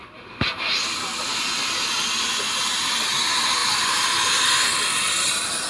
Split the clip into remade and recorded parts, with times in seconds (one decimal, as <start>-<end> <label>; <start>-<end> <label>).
0.0-3.6 recorded; 3.6-5.1 remade; 5.1-5.7 recorded

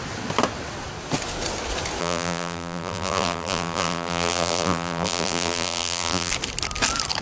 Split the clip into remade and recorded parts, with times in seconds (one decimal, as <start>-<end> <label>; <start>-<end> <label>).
0.0-2.0 recorded; 2.0-6.3 remade; 6.3-7.2 recorded

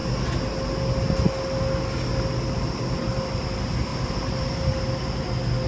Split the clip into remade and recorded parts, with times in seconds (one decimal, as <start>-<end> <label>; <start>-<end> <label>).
0.0-3.9 recorded; 3.9-4.7 remade; 4.7-5.7 recorded